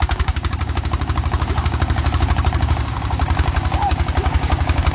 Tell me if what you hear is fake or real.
fake